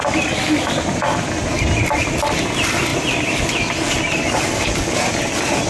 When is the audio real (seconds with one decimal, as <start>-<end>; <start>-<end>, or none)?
0.0-5.7